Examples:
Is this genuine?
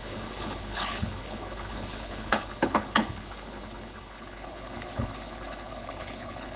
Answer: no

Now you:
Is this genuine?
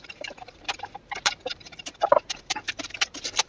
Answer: no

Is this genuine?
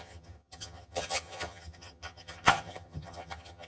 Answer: no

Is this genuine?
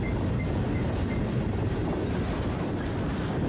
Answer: yes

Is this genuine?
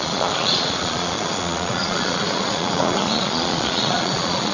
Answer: no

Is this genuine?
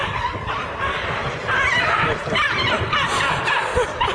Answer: yes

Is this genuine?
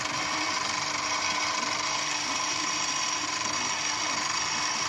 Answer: yes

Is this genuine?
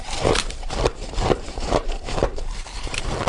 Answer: no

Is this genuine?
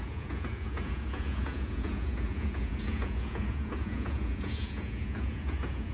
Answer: no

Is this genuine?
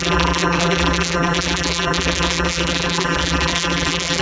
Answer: no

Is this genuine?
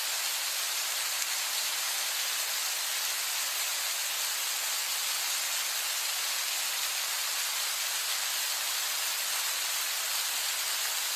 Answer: yes